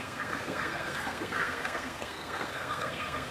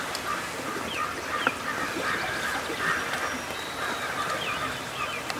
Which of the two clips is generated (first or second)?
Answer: first